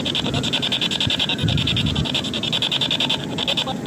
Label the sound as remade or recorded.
recorded